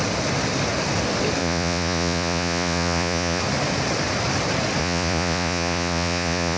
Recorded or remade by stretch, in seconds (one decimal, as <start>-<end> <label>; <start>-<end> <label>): 0.0-1.4 recorded; 1.4-3.4 remade; 3.4-4.8 recorded; 4.8-6.6 remade